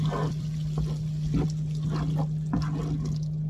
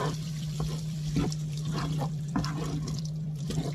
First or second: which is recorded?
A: first